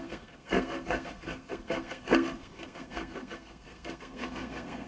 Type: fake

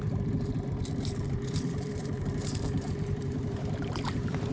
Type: fake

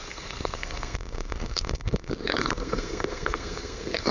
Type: fake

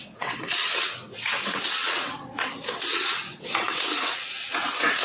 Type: fake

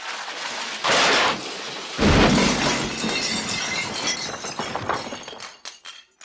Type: real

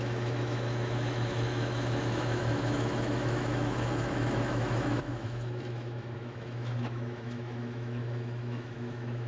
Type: fake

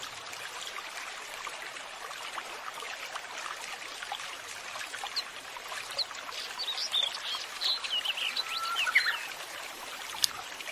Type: real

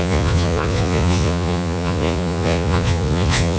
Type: fake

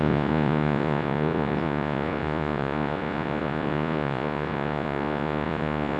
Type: fake